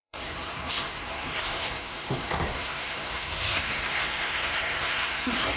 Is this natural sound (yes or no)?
no